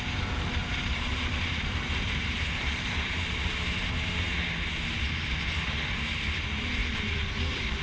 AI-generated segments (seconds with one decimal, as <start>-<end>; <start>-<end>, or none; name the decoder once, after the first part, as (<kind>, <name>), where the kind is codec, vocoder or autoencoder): 0.6-4.5 (vocoder, BigVGAN v2); 6.8-7.8